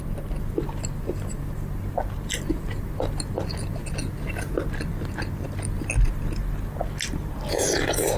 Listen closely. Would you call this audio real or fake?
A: real